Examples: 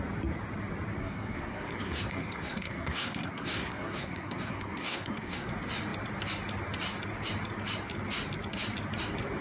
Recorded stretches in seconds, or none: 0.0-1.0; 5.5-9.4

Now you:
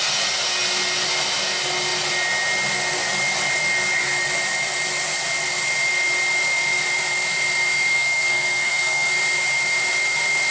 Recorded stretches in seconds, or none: 0.0-7.9; 9.1-10.5

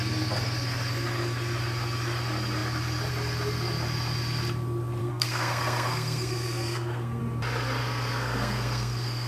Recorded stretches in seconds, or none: 0.0-5.0; 7.2-7.8

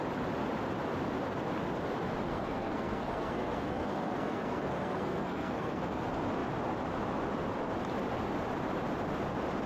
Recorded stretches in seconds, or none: 0.0-2.3; 6.0-9.7

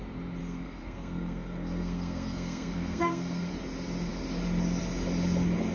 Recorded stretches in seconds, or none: 0.0-0.4; 3.5-5.7

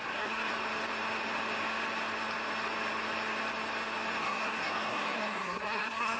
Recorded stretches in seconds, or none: 0.5-4.2

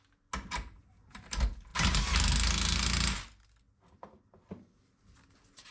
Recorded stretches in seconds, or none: 0.0-5.7

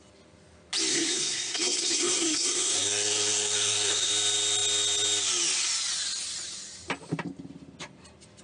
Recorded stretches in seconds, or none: 0.0-0.9; 4.1-8.4